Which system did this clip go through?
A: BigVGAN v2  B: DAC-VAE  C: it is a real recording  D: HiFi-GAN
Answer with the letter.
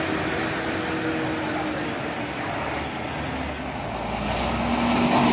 C